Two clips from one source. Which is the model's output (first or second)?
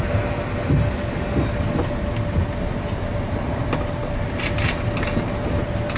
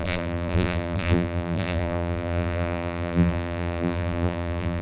second